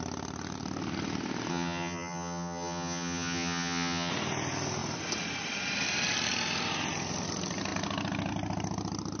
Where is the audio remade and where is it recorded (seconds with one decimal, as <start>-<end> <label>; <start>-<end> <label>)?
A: 0.0-1.5 recorded; 1.5-4.1 remade; 4.1-9.2 recorded